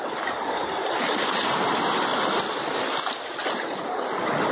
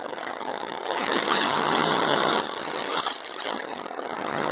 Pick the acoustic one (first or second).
first